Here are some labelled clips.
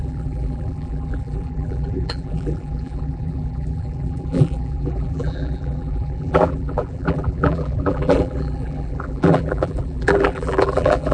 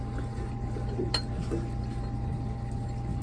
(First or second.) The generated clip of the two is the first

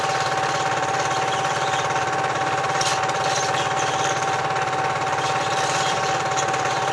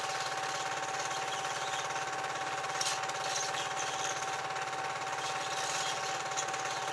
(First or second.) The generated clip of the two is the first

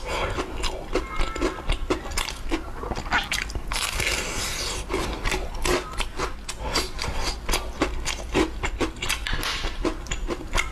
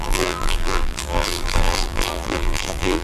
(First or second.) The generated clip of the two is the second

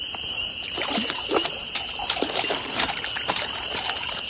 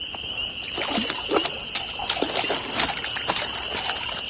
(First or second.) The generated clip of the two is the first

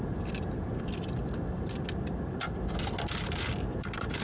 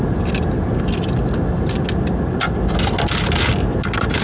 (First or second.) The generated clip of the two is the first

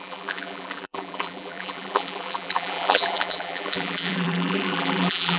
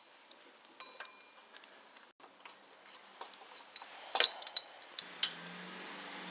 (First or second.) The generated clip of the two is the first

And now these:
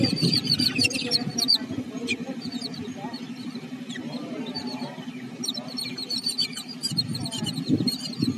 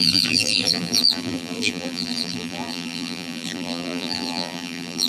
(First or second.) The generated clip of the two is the second